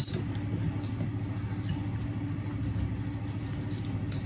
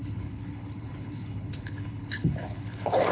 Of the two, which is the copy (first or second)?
second